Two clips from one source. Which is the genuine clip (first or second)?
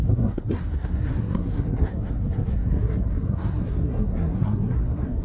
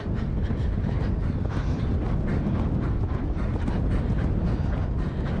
second